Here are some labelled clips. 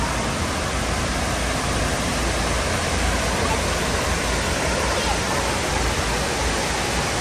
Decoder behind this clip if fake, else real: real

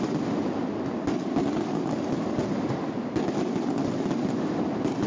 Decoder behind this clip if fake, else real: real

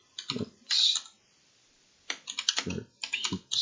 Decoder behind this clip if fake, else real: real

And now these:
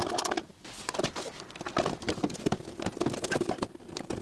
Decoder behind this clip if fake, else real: real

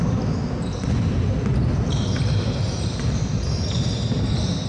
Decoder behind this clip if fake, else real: real